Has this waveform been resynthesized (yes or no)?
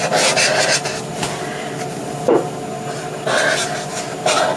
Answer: no